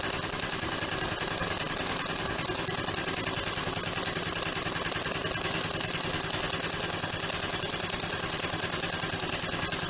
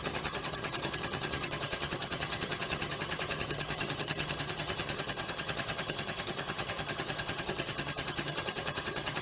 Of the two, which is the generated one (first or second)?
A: second